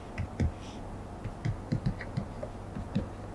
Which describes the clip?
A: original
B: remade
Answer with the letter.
A